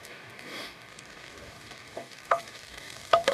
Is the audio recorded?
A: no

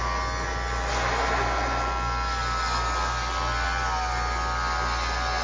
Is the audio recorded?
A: yes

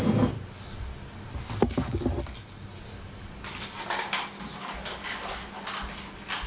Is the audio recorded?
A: yes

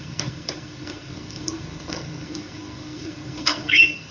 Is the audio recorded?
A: no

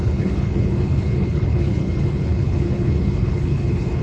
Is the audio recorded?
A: no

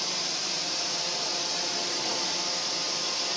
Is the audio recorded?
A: no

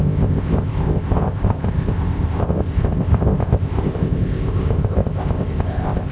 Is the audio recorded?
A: no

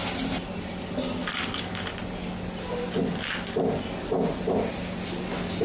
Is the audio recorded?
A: yes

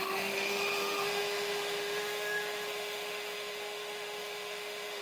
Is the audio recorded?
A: no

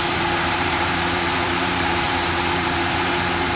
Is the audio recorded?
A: no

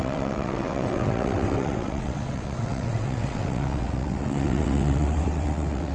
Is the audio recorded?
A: no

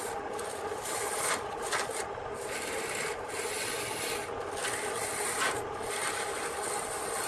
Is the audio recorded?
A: yes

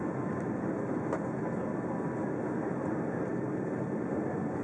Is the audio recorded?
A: yes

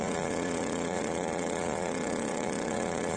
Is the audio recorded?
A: no